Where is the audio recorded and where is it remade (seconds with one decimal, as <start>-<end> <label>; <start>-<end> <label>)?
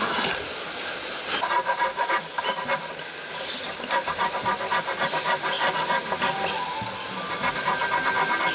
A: 0.0-1.9 recorded; 1.9-2.4 remade; 2.4-8.5 recorded